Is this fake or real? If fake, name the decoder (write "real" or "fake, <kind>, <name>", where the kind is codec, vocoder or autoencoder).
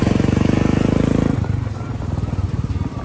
real